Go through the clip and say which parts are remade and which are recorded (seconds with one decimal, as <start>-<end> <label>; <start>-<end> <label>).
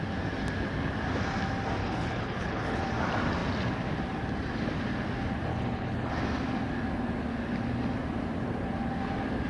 0.0-1.8 recorded; 1.8-2.8 remade; 2.8-5.5 recorded; 5.5-6.1 remade; 6.1-9.5 recorded